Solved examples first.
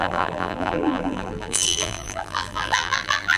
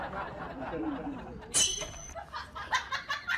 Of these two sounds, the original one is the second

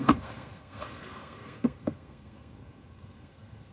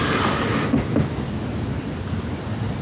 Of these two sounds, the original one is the second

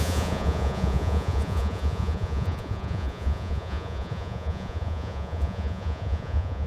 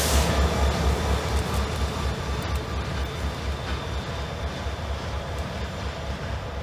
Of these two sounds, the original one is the second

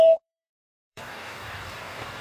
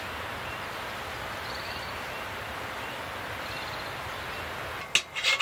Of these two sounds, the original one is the second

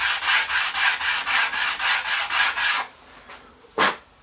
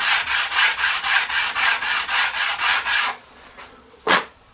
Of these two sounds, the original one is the first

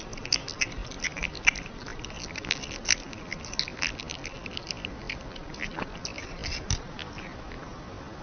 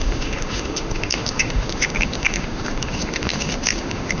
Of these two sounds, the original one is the first